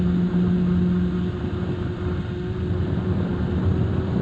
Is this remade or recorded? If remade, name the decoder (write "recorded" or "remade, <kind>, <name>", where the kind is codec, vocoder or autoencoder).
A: recorded